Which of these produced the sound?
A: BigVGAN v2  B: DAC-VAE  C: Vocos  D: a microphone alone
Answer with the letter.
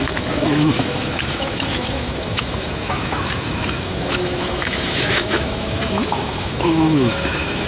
B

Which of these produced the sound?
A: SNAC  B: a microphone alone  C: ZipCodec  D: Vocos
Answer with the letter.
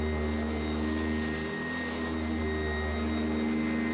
B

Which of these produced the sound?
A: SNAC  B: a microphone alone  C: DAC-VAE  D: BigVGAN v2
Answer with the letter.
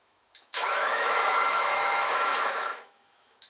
C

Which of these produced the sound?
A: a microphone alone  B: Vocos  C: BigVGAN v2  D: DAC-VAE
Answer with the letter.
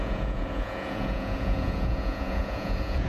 B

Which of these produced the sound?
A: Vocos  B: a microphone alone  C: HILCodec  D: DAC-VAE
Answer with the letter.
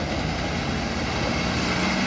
B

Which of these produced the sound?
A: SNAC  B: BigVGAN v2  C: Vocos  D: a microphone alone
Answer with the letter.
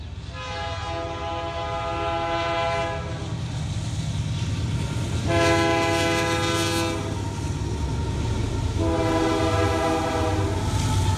D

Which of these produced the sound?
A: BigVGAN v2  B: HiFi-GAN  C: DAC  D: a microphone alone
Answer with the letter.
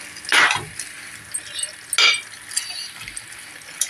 D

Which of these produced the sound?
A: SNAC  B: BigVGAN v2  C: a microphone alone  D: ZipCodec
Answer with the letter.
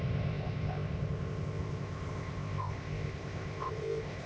D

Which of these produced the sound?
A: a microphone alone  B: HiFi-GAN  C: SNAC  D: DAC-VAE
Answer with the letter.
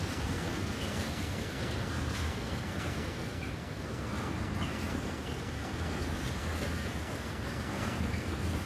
C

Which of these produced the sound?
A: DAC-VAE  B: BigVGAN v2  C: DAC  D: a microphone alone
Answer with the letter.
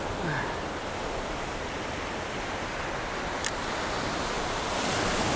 D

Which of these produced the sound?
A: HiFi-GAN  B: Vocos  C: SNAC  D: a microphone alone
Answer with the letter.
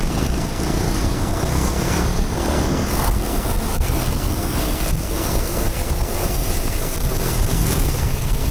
C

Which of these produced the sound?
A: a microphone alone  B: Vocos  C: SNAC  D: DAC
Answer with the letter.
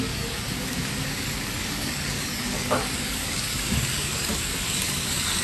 D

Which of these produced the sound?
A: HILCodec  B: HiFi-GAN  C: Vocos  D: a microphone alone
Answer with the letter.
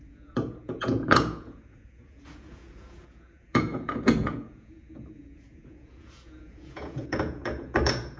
C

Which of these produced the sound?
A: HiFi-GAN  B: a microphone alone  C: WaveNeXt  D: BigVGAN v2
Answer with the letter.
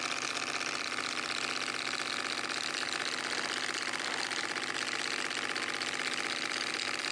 B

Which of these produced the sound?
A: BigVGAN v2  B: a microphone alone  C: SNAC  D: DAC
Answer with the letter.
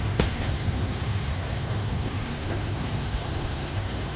C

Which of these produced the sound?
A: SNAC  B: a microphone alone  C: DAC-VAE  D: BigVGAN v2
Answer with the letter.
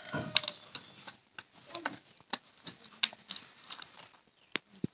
B